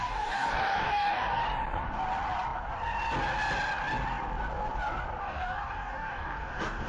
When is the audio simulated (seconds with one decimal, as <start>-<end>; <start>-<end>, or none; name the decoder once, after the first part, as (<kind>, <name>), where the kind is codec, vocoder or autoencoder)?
0.0-1.4 (codec, DAC); 5.2-6.9